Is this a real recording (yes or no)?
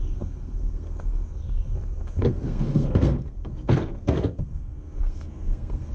no